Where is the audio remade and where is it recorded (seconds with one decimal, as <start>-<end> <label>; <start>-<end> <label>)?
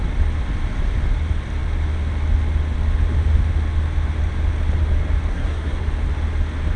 0.0-5.3 recorded; 5.3-5.8 remade; 5.8-6.8 recorded